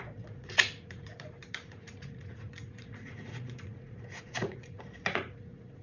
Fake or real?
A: fake